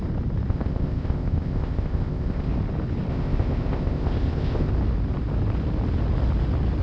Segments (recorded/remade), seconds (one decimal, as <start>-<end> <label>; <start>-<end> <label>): 0.0-0.5 recorded; 0.5-2.5 remade; 2.5-3.1 recorded; 3.1-4.7 remade; 4.7-6.8 recorded